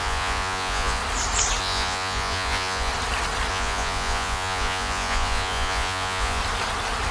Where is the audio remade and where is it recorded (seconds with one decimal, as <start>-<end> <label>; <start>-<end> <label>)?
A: 0.0-1.0 remade; 1.0-1.6 recorded; 1.6-2.9 remade; 2.9-3.5 recorded; 3.5-6.4 remade; 6.4-7.1 recorded